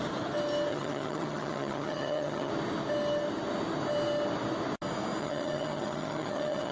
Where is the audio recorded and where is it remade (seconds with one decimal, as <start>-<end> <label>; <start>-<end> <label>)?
0.0-0.7 recorded; 0.7-2.5 remade; 2.5-5.2 recorded; 5.2-6.7 remade